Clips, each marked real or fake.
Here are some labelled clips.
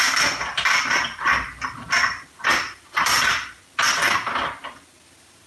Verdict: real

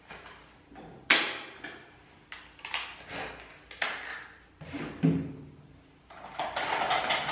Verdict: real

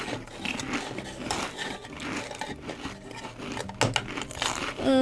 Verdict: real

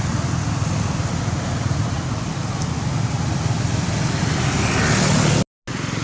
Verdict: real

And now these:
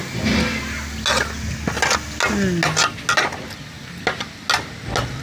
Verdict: real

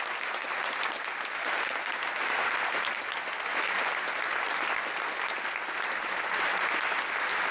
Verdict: real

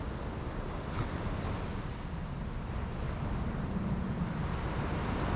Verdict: real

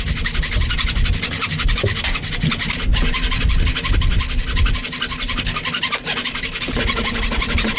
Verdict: real